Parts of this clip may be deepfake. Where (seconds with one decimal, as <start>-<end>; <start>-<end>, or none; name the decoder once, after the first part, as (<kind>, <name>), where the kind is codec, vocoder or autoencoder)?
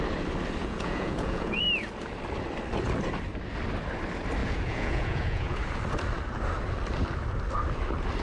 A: 0.6-1.6 (vocoder, Vocos); 4.4-5.6